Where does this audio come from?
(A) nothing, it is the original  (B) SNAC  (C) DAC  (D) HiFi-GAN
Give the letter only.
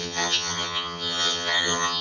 D